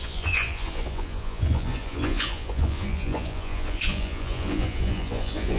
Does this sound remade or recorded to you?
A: remade